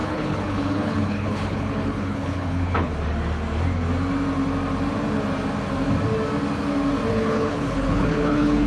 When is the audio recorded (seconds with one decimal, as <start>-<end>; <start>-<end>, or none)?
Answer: 2.9-7.1